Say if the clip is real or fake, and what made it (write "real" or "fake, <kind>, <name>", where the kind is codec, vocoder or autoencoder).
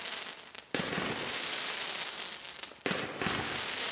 real